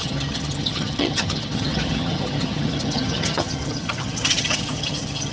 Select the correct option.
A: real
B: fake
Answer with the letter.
B